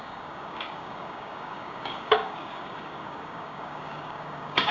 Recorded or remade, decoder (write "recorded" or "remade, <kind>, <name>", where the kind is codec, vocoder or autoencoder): remade, codec, DAC